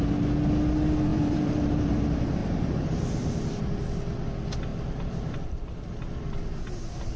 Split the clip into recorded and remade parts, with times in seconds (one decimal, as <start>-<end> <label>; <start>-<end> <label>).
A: 0.0-1.1 recorded; 1.1-2.0 remade; 2.0-2.4 recorded; 2.4-3.6 remade; 3.6-4.7 recorded; 4.7-6.1 remade; 6.1-7.2 recorded